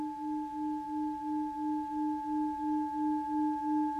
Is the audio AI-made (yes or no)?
no